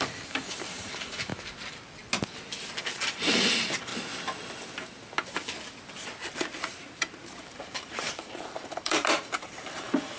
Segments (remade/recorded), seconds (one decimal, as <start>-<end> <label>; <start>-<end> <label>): 0.0-1.3 remade; 1.3-2.8 recorded; 2.8-3.9 remade; 3.9-7.4 recorded; 7.4-10.2 remade